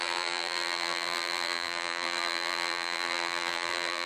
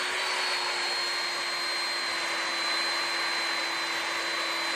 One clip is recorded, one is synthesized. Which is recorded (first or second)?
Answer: second